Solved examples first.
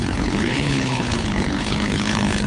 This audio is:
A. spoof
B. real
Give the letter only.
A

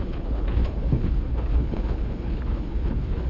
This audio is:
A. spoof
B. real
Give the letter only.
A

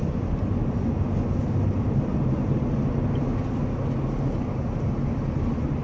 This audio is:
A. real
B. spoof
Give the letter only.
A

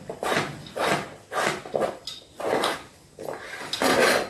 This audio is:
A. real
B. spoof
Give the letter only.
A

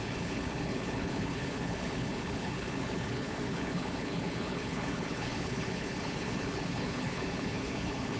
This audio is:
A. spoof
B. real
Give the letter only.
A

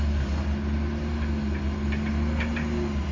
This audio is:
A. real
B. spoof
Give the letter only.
A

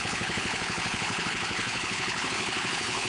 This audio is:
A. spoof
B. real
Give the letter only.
A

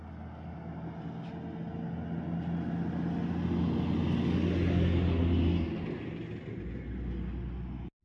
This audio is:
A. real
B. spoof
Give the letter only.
A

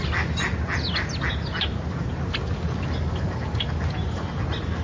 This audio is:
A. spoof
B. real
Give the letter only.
B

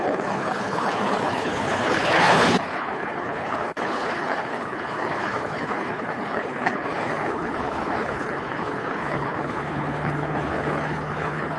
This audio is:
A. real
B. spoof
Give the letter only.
B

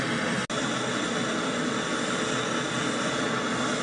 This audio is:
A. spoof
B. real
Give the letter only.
B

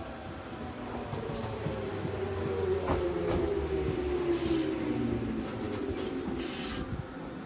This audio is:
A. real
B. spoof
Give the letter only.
A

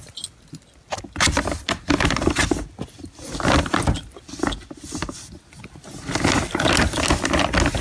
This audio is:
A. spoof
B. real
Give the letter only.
B